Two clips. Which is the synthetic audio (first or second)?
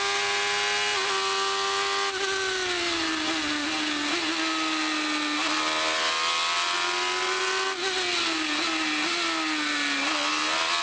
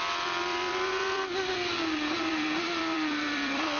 second